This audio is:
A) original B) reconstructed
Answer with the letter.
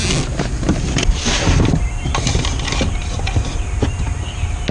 A